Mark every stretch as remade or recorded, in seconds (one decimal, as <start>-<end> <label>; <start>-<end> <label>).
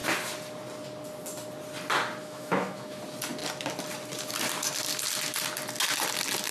0.0-2.2 recorded; 2.2-3.0 remade; 3.0-6.5 recorded